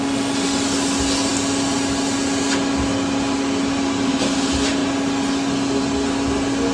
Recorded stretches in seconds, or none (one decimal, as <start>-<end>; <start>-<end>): 0.0-6.7